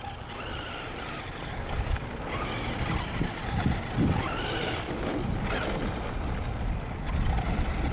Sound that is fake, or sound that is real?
fake